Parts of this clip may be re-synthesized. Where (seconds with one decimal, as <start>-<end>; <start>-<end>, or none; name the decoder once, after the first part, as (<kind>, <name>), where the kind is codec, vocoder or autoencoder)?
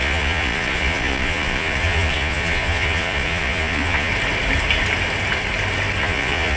0.0-4.1 (vocoder, Vocos); 6.0-6.6